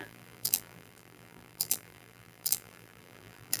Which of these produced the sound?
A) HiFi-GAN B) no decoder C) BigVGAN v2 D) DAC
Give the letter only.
C